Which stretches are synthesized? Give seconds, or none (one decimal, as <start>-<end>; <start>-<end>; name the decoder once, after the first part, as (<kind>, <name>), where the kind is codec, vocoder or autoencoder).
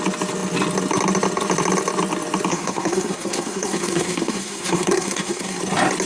2.5-5.6 (codec, SNAC)